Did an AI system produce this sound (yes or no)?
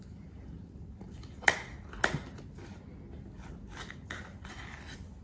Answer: no